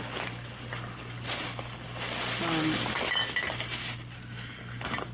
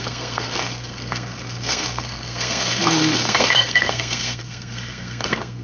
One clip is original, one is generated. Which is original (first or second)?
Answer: first